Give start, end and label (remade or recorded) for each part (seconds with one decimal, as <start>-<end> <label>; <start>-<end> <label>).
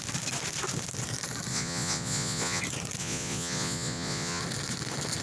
0.0-1.5 recorded; 1.5-2.6 remade; 2.6-3.0 recorded; 3.0-4.4 remade; 4.4-5.2 recorded